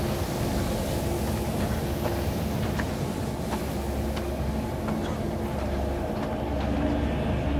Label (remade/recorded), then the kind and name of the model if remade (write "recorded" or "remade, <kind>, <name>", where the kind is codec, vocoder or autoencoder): recorded